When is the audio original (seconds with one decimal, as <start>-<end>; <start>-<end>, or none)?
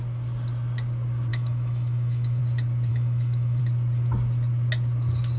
0.0-1.3; 2.4-2.9; 3.6-5.4